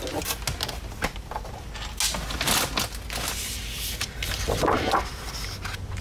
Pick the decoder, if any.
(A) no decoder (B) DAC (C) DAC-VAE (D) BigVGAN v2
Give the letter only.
A